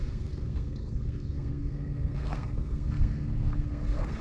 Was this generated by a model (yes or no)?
yes